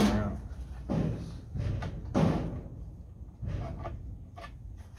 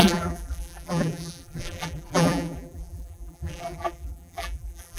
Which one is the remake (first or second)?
second